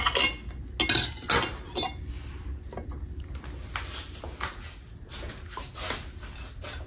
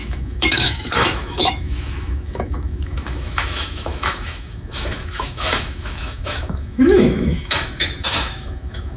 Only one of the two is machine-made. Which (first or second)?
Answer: second